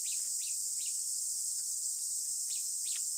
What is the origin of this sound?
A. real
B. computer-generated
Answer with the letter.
B